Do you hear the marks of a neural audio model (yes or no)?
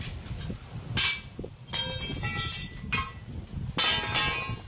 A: no